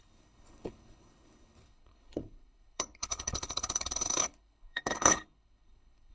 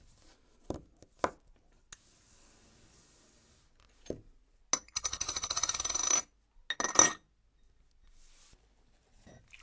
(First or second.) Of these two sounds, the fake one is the first